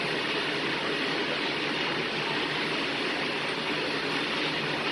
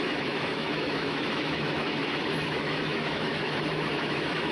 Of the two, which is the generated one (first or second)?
second